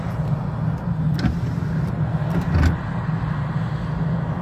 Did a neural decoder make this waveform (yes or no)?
no